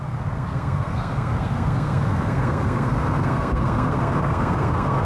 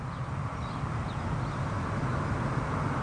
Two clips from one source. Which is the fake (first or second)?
first